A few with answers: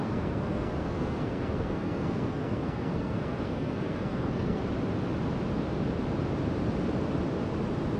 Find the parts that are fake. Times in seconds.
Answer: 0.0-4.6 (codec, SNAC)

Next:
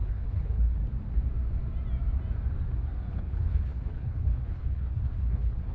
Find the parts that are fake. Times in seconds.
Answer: 0.0-0.8 (codec, HILCodec); 3.1-5.7

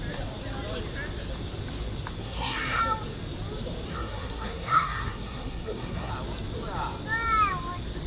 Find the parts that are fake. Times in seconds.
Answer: 2.2-2.8 (codec, SNAC); 3.9-6.1

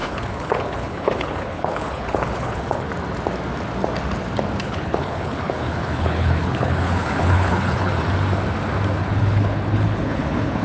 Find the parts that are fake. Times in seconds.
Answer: 0.0-2.9 (codec, HILCodec); 4.6-7.9; 9.0-10.6

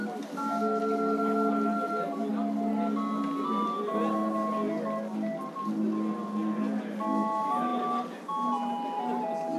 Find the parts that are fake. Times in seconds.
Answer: none

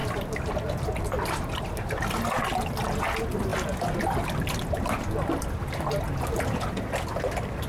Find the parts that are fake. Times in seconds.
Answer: 0.0-0.5 (vocoder, BigVGAN v2)

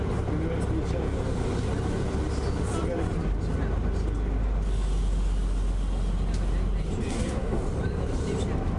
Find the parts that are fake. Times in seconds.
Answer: 7.1-7.6 (codec, SNAC)